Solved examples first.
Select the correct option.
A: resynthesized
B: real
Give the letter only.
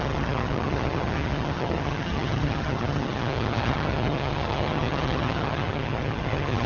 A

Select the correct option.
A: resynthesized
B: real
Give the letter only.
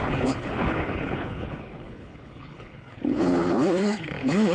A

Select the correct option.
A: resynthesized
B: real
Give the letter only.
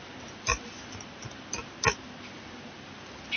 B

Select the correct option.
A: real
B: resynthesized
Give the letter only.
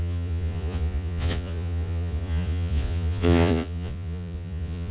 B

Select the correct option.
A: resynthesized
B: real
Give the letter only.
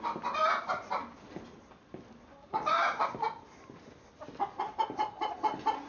B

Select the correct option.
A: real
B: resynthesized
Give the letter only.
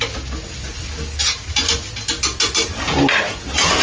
A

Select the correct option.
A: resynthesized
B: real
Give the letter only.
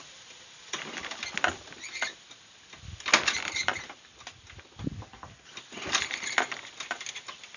B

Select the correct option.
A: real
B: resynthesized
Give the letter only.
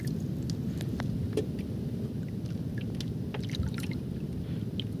A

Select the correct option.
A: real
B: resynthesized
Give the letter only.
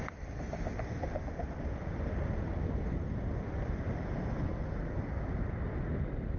A